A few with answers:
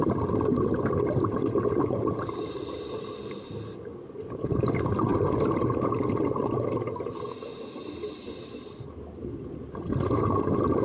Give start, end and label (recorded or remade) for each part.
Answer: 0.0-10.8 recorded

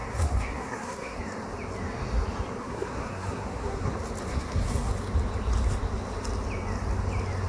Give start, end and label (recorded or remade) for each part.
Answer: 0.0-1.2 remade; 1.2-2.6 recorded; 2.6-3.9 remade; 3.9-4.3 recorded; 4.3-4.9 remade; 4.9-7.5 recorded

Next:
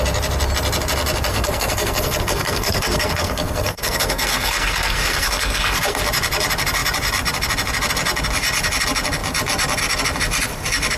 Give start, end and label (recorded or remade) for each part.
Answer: 0.0-1.3 recorded; 1.3-6.0 remade; 6.0-11.0 recorded

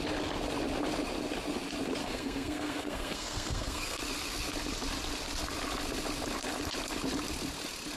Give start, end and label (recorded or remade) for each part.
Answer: 0.0-2.0 recorded; 2.0-4.0 remade; 4.0-8.0 recorded

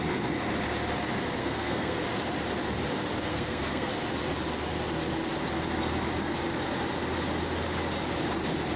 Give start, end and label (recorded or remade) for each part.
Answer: 0.0-1.4 recorded; 1.4-2.0 remade; 2.0-3.3 recorded; 3.3-3.9 remade; 3.9-8.8 recorded

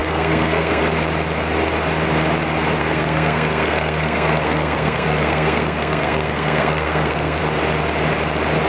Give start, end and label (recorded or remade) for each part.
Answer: 0.0-0.8 remade; 0.8-2.8 recorded; 2.8-7.4 remade; 7.4-8.7 recorded